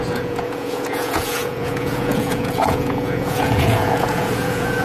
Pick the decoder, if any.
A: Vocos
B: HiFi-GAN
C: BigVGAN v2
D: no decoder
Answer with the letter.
A